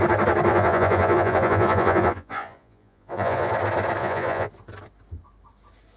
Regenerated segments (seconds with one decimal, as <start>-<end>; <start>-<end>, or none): 0.5-3.5; 4.0-4.5